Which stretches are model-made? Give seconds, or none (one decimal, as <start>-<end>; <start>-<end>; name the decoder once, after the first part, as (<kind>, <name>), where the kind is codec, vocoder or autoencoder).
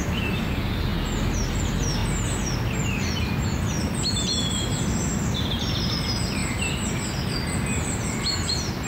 2.0-5.9 (vocoder, BigVGAN v2)